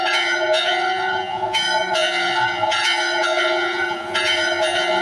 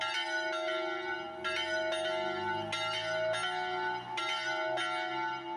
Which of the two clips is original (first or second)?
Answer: second